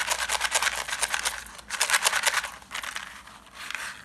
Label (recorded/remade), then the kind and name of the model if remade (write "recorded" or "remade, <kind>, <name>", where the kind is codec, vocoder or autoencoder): recorded